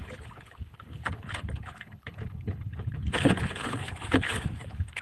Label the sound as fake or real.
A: fake